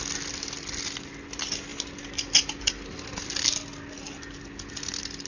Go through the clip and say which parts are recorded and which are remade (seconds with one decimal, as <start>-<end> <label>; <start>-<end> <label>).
0.0-5.3 recorded